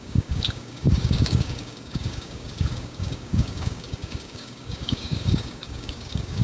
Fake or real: fake